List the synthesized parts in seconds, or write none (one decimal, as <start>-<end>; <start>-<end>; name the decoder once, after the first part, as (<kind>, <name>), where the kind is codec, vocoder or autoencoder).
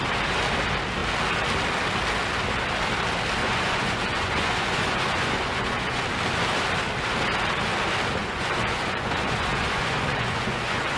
3.4-6.0 (vocoder, Vocos); 8.2-11.0